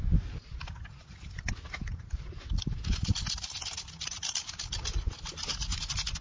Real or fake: real